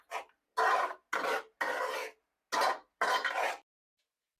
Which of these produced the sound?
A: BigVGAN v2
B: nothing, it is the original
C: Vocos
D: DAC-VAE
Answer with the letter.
B